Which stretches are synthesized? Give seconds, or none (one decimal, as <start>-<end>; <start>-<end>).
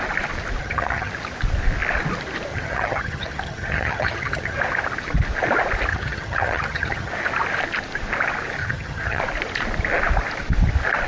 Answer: 0.6-1.1; 2.5-4.6; 5.9-7.1; 8.6-9.2